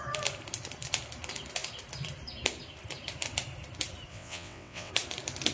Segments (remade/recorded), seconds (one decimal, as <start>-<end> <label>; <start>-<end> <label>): 0.0-4.1 recorded; 4.1-4.9 remade; 4.9-5.5 recorded